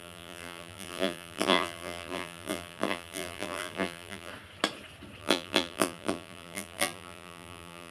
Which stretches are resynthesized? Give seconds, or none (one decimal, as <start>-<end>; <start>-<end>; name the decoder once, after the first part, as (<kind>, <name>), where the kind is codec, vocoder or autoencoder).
0.0-4.3 (vocoder, BigVGAN v2); 5.2-7.9